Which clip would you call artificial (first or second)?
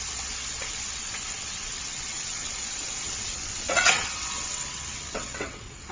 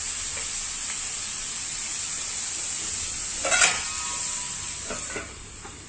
first